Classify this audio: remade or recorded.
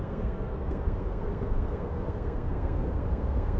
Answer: remade